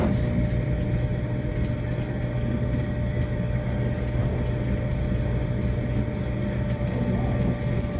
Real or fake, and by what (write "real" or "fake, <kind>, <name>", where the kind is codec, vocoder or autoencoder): real